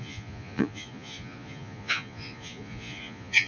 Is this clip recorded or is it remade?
remade